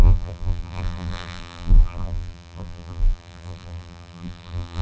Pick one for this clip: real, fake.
fake